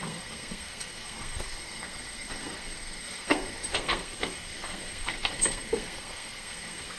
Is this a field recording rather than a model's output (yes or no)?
no